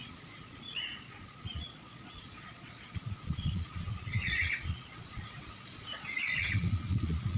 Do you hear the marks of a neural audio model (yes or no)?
yes